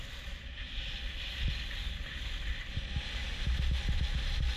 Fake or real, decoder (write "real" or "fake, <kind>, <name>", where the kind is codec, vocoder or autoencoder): real